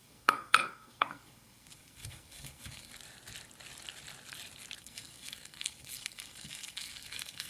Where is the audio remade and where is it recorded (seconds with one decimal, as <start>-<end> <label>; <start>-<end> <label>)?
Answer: 0.0-2.9 remade; 2.9-4.8 recorded; 4.8-7.5 remade